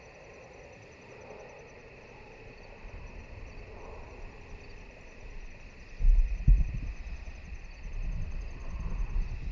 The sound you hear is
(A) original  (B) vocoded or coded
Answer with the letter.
A